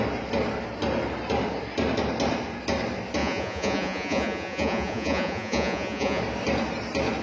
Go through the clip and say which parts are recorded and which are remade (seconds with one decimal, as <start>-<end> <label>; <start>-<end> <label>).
0.0-3.2 recorded; 3.2-6.2 remade; 6.2-7.2 recorded